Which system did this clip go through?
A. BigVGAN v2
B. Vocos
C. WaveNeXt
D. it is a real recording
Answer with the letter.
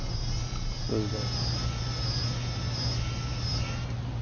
D